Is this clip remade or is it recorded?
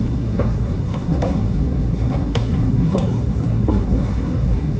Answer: remade